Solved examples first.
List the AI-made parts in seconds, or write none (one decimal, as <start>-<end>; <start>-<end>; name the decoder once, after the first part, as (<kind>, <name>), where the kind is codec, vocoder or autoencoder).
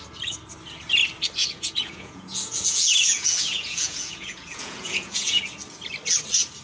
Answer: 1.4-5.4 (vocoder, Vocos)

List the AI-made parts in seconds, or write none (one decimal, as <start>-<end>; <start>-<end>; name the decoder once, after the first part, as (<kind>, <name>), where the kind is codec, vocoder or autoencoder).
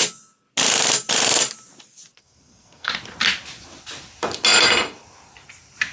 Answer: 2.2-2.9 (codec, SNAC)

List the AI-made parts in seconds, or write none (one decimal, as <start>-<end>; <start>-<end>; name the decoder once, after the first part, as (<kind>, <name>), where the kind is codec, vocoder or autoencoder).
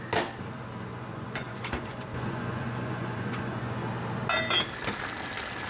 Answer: 0.9-3.9 (vocoder, Vocos)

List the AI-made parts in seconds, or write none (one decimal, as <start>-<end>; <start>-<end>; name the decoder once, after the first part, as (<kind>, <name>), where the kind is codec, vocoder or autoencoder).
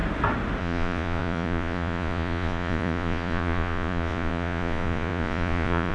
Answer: 0.6-5.9 (vocoder, Vocos)